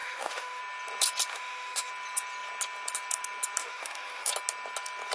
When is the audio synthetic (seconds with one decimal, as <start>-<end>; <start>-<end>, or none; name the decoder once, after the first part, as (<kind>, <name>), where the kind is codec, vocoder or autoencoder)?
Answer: 0.0-0.6 (autoencoder, DAC-VAE); 1.3-1.9; 3.6-4.3